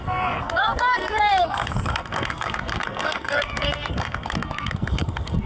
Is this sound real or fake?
fake